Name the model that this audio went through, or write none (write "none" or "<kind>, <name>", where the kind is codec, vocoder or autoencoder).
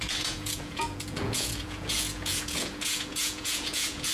vocoder, Vocos